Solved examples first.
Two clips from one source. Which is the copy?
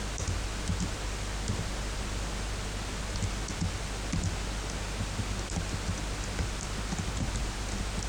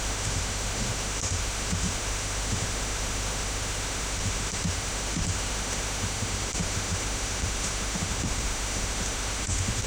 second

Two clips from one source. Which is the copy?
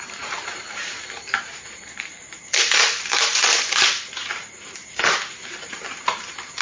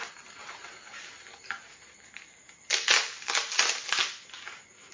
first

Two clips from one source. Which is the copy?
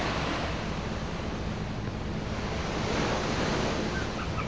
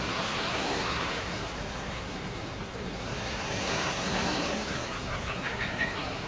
second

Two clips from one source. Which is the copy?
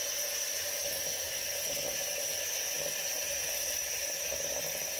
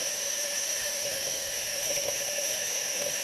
second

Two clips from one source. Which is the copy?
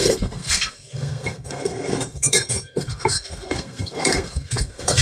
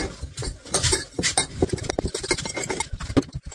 first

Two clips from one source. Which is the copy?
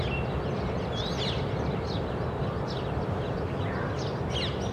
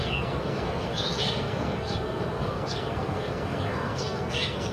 second